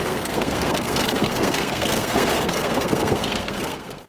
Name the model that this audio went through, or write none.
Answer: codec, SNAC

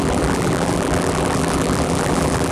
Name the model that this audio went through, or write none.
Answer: vocoder, BigVGAN v2